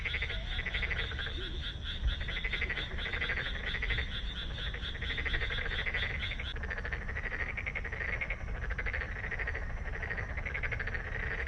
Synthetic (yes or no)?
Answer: no